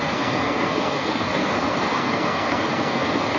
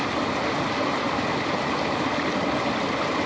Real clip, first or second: second